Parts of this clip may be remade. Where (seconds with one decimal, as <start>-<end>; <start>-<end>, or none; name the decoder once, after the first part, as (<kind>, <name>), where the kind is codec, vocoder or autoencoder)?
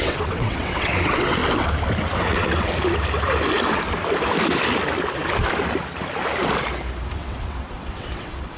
0.0-1.4 (vocoder, WaveNeXt); 2.3-2.7; 7.1-8.6